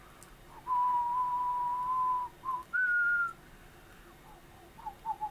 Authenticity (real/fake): real